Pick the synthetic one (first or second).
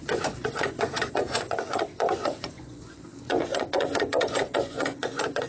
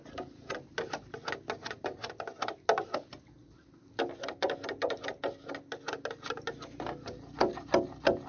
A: first